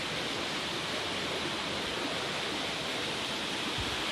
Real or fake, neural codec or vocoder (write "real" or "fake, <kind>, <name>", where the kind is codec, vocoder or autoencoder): real